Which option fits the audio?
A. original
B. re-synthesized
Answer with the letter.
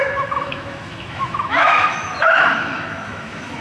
B